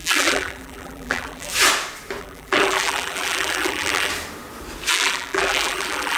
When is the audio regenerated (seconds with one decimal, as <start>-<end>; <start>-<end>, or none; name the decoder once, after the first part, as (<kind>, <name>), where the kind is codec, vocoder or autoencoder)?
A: 0.0-1.5 (vocoder, BigVGAN v2); 2.2-4.1; 4.9-6.2